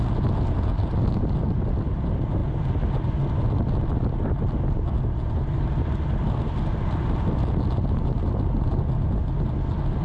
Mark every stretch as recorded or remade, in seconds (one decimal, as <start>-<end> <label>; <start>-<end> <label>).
0.0-10.0 recorded